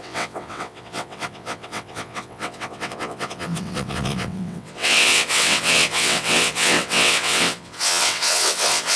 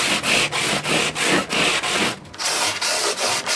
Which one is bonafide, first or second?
second